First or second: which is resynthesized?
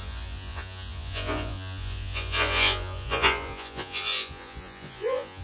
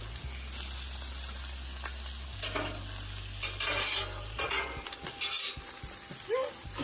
first